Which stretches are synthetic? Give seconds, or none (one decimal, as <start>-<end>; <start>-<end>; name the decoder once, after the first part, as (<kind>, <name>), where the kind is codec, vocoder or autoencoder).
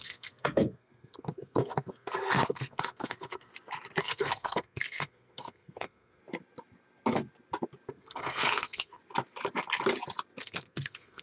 0.0-3.5 (codec, SNAC); 4.0-6.2; 7.9-9.0; 10.4-11.2